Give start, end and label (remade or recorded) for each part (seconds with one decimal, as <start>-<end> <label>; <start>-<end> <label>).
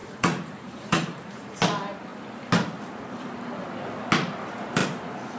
0.0-1.6 remade; 1.6-5.4 recorded